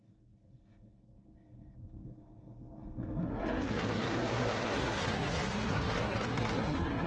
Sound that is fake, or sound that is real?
fake